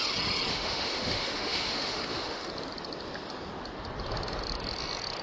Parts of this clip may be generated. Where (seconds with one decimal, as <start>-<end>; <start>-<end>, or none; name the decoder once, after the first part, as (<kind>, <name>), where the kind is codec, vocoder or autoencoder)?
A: 0.5-2.5 (autoencoder, DAC-VAE)